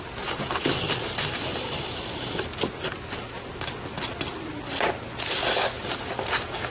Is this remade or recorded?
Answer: recorded